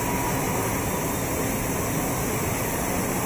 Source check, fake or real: real